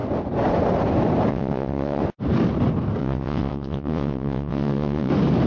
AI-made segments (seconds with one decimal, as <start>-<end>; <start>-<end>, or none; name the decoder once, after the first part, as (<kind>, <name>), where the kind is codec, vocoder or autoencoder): 1.3-2.0 (vocoder, WaveNeXt); 3.0-5.1